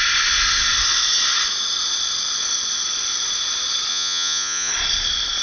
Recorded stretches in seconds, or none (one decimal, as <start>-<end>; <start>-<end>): 0.0-3.9; 4.7-5.4